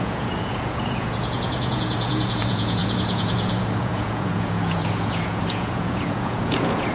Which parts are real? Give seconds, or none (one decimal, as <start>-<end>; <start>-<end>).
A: none